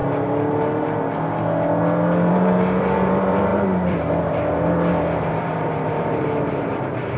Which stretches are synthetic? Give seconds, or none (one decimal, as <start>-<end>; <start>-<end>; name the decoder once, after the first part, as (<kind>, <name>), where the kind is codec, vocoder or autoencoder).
2.3-7.2 (vocoder, BigVGAN v2)